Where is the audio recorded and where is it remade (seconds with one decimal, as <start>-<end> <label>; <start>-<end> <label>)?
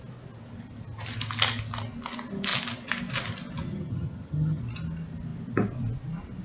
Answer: 0.0-3.7 recorded; 3.7-4.6 remade; 4.6-6.4 recorded